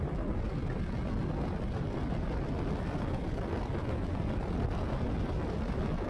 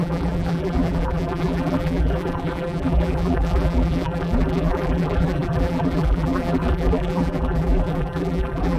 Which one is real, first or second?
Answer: first